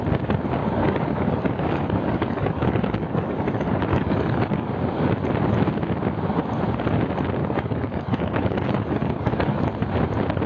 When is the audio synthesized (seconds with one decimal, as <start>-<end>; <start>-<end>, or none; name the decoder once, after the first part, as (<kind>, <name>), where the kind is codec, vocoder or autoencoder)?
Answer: 0.6-4.7 (codec, DAC); 7.4-9.7